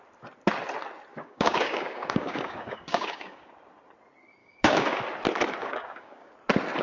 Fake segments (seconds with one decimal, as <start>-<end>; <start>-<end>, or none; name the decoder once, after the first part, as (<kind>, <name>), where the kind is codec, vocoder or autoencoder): 1.1-3.5 (codec, DAC); 4.4-5.0; 5.6-6.3

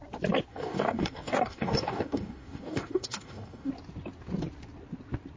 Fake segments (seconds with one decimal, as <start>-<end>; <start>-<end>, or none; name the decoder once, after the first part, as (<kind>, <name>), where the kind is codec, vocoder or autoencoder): 0.5-3.7 (codec, DAC)

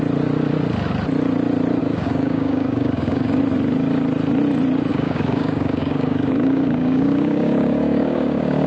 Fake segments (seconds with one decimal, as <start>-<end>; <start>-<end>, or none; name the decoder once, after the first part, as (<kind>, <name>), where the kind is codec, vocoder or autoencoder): 1.8-3.4 (codec, DAC); 4.9-8.7

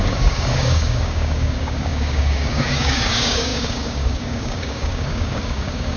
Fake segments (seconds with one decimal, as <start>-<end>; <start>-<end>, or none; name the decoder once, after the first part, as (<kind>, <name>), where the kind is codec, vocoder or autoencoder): 0.0-6.0 (codec, DAC)

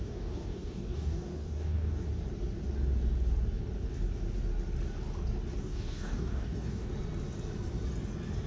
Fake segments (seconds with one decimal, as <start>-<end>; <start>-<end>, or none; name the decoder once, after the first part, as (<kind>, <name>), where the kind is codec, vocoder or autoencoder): 0.0-2.1 (codec, DAC); 5.6-6.9

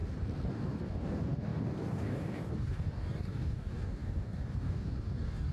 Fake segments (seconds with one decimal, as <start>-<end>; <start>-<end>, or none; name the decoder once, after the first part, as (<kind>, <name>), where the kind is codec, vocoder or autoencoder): 0.5-5.5 (codec, DAC)